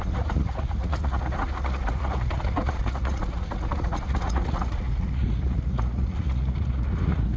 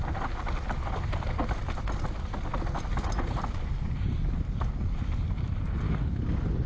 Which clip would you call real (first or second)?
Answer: second